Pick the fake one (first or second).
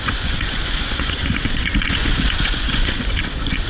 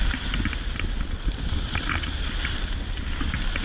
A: first